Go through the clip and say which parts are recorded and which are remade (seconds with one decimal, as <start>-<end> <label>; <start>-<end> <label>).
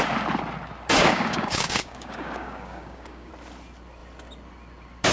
0.0-1.0 recorded; 1.0-3.3 remade; 3.3-5.1 recorded